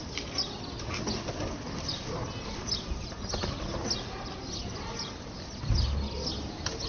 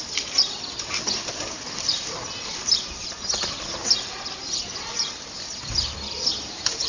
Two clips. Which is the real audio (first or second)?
first